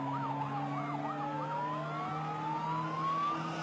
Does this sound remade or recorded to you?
recorded